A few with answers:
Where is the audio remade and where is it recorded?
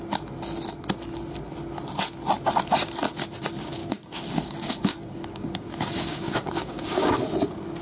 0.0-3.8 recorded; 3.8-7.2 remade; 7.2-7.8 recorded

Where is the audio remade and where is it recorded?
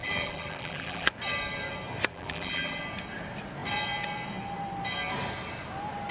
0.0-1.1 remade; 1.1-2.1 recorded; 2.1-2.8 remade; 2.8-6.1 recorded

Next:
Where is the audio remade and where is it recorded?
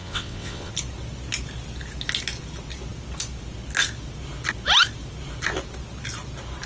0.0-0.7 remade; 0.7-6.7 recorded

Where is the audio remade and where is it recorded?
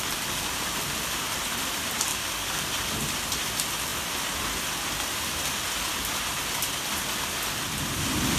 0.0-2.1 recorded; 2.1-2.7 remade; 2.7-8.4 recorded